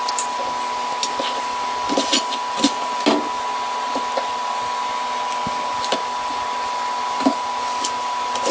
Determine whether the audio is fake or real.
real